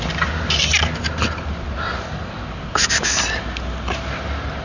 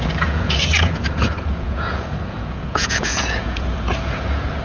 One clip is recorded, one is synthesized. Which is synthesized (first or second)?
second